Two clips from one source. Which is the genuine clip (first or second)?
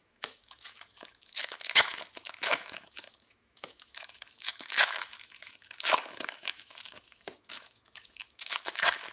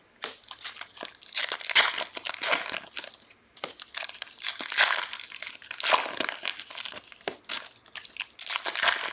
second